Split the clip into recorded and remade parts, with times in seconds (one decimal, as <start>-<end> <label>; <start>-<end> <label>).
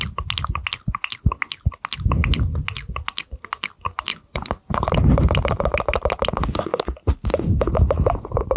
0.0-8.6 recorded